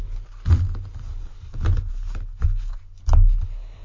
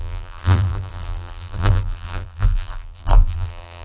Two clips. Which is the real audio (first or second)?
first